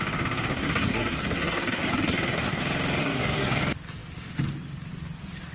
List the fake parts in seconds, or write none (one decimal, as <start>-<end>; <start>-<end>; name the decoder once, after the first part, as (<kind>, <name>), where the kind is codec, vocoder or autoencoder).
0.5-2.6 (codec, SNAC); 3.0-3.6